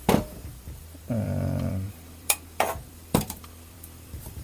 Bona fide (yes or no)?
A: no